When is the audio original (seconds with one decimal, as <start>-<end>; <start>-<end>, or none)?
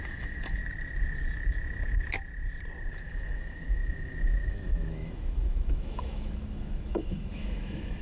0.6-2.9